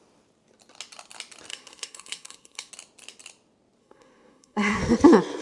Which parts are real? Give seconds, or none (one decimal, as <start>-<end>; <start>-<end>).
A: 0.0-1.5; 2.7-3.8; 4.8-5.4